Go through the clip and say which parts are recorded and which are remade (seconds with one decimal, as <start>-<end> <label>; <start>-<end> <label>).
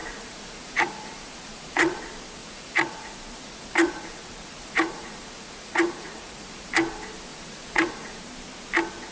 0.0-2.0 remade; 2.0-2.4 recorded; 2.4-6.7 remade; 6.7-7.3 recorded; 7.3-8.2 remade; 8.2-9.1 recorded